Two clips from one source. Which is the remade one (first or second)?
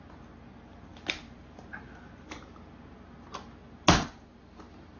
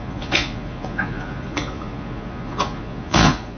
second